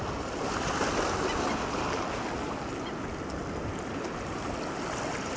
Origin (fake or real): real